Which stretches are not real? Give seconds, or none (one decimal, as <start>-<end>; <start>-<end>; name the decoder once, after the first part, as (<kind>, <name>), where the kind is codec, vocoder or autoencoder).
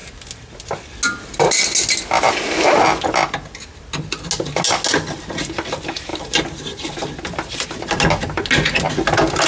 none